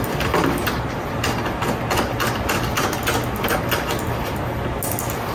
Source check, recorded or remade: recorded